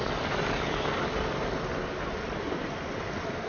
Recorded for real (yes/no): yes